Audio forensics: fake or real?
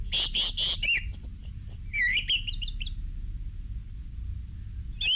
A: real